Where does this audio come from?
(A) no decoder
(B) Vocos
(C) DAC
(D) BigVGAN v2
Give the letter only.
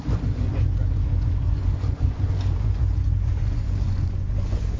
B